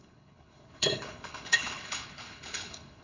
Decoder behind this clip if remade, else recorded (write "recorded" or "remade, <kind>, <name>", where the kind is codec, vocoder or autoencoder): remade, codec, HILCodec